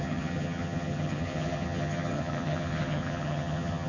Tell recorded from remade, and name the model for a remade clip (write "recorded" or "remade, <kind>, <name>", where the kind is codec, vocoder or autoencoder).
remade, vocoder, HiFi-GAN